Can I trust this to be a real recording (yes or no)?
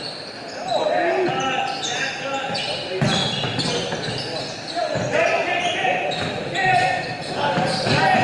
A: yes